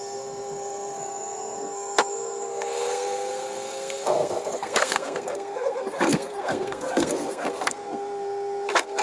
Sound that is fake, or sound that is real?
fake